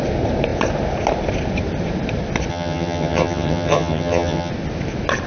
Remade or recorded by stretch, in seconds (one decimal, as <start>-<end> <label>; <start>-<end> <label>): 0.0-2.5 recorded; 2.5-4.5 remade; 4.5-5.3 recorded